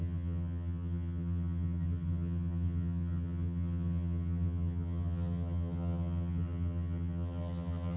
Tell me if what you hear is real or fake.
fake